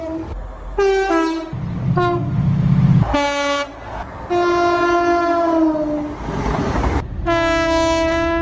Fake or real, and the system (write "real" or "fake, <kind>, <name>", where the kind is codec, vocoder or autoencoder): real